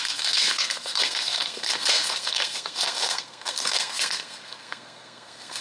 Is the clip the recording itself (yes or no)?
no